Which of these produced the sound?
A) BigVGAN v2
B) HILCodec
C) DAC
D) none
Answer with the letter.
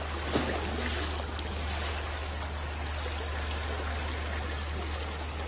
D